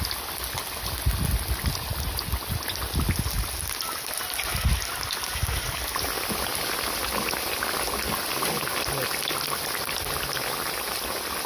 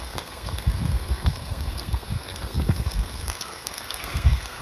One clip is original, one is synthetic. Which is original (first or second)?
first